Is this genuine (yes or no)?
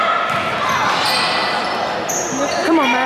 yes